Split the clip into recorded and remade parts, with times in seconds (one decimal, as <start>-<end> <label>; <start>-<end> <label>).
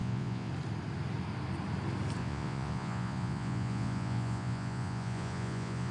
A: 0.0-0.5 remade; 0.5-2.2 recorded; 2.2-5.9 remade